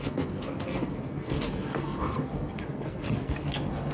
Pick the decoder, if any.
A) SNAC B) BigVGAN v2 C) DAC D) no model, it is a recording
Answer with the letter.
A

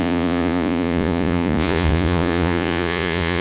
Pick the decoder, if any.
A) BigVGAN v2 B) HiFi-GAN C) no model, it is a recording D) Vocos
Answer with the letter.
D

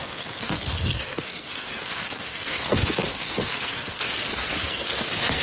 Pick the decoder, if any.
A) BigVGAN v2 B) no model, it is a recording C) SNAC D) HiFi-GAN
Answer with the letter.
C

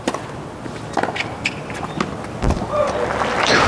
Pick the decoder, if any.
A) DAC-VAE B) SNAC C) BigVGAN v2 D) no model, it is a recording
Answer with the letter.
D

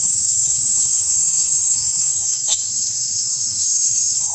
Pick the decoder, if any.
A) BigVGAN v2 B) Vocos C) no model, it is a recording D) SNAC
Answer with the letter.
D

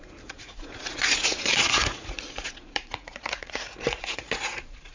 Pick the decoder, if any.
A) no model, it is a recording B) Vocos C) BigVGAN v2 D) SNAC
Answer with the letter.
B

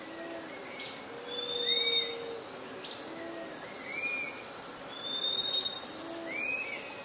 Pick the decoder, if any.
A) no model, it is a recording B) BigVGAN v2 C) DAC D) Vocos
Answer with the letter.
A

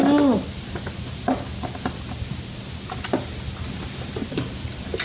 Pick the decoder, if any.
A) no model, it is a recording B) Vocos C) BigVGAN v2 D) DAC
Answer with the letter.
A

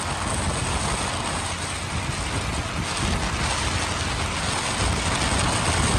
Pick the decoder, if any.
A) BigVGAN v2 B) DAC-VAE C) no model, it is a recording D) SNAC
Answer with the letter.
C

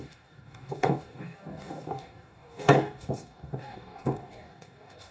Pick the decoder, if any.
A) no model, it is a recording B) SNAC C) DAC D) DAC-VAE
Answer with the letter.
C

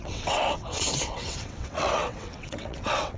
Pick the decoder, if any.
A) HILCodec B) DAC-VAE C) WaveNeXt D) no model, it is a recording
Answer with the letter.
C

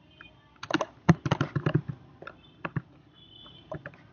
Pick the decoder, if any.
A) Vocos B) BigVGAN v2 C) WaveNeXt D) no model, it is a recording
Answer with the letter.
B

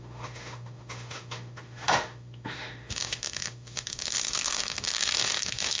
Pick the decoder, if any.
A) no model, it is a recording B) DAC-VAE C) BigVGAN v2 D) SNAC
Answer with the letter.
B